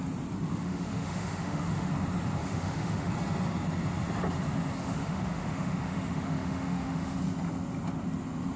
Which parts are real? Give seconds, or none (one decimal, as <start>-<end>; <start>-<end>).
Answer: 0.0-0.5; 1.9-2.4; 3.1-4.8; 7.2-8.6